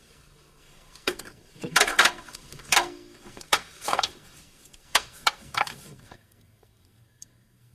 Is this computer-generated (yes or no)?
yes